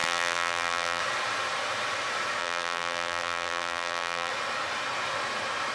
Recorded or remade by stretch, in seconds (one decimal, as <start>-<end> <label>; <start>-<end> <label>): 0.0-1.0 remade; 1.0-2.4 recorded; 2.4-4.3 remade; 4.3-5.7 recorded